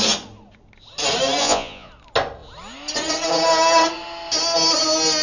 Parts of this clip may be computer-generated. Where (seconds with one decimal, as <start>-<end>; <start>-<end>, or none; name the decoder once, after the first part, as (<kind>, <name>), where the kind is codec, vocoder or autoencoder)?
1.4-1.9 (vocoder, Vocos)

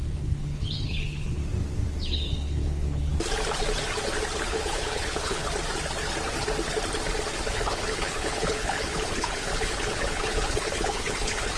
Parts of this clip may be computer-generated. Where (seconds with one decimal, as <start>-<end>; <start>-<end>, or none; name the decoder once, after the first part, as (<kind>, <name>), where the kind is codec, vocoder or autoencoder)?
0.0-1.4 (codec, HILCodec); 2.0-3.1; 4.5-5.4; 7.5-11.6

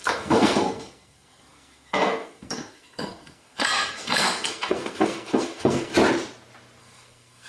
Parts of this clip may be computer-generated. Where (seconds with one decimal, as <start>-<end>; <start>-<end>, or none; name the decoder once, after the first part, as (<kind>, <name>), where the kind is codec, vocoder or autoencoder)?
0.0-5.9 (codec, SNAC); 6.8-7.5

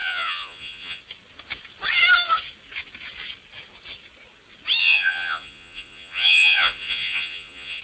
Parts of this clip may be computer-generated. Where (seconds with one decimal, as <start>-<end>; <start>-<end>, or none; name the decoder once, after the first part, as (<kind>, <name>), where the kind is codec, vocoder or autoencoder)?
0.0-1.0 (vocoder, Vocos); 4.8-7.8

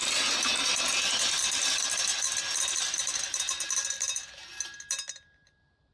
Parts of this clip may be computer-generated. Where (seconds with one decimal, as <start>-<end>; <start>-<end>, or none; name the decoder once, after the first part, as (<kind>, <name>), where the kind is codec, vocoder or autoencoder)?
none

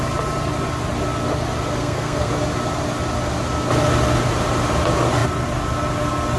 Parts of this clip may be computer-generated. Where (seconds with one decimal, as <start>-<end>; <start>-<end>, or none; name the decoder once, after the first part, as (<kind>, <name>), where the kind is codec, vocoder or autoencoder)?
1.8-2.3 (codec, SNAC)

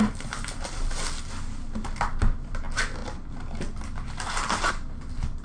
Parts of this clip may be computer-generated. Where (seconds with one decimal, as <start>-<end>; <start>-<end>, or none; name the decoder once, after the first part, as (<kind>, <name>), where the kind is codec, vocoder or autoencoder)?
none

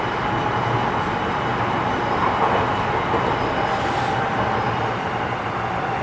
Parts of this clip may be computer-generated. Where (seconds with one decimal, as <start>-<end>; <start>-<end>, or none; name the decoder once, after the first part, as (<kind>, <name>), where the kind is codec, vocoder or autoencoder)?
none